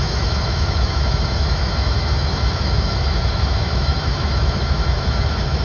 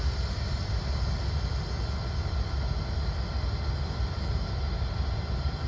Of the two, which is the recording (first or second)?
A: second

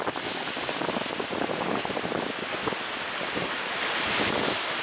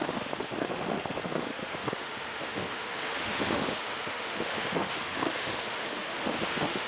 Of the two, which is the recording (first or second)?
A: first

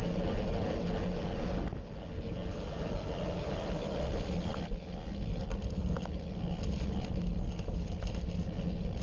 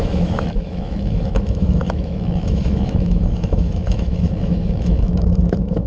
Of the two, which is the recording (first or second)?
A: first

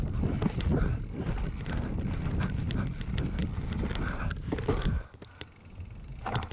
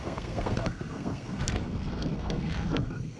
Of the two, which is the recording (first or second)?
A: first